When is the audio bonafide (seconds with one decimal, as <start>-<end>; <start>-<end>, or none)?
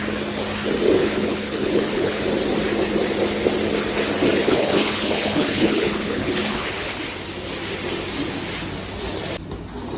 0.0-1.0; 2.2-4.4; 7.0-10.0